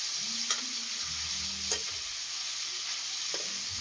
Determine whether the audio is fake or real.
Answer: real